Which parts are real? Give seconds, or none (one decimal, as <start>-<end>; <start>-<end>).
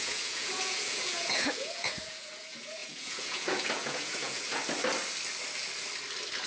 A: 4.6-6.5